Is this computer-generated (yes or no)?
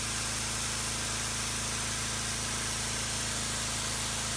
no